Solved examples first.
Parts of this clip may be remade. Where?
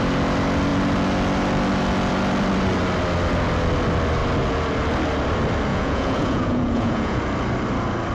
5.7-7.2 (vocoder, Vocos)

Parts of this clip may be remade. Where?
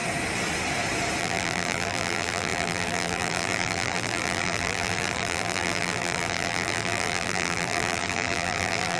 1.2-9.0 (vocoder, BigVGAN v2)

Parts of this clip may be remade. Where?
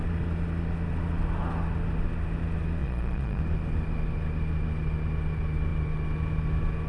2.8-3.4 (vocoder, Vocos)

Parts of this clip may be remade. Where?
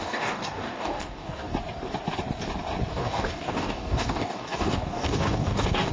0.0-1.5 (codec, DAC); 2.9-5.9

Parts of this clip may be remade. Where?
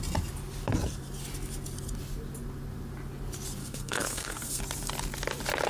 3.6-4.6 (codec, SNAC)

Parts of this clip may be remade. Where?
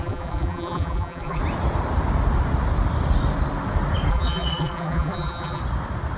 0.0-1.4 (vocoder, BigVGAN v2); 4.1-5.6